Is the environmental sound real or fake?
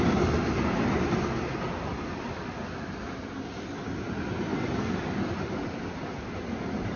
real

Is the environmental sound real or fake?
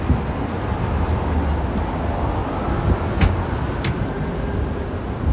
real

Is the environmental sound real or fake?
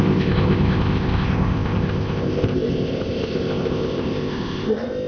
fake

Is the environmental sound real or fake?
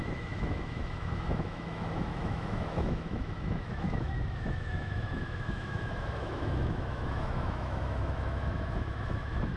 fake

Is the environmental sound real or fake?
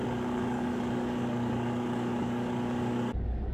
fake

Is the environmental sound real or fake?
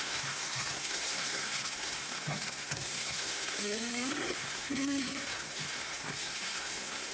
fake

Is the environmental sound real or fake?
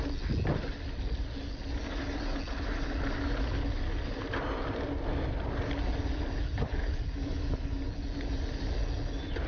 real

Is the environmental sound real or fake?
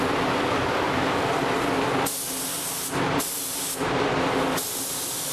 real